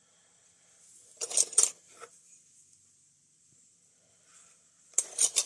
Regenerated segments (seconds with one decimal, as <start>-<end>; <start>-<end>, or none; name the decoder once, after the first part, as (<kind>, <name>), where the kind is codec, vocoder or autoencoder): none